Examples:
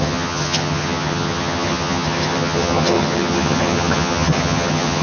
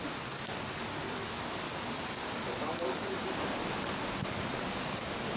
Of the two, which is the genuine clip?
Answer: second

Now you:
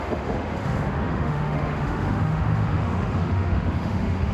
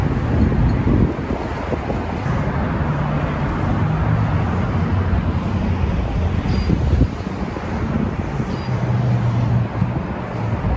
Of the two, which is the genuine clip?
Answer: second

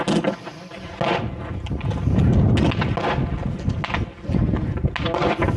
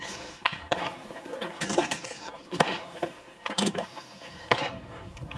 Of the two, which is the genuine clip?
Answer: first